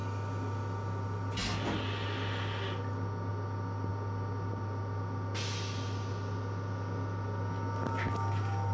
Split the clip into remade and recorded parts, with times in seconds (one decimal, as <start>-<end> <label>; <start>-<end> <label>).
0.0-8.7 recorded